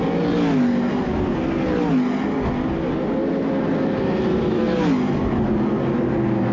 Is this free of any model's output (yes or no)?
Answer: yes